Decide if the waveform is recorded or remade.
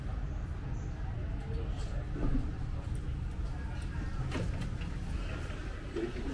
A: recorded